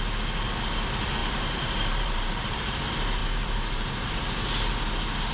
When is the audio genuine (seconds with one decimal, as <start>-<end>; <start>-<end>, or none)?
0.0-1.2; 2.8-3.2; 4.7-5.3